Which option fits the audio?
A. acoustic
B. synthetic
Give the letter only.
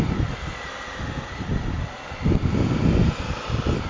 A